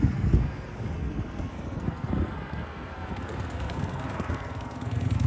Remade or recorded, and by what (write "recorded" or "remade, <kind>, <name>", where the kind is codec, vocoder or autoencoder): remade, codec, SNAC